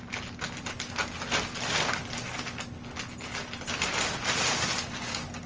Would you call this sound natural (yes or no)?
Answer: yes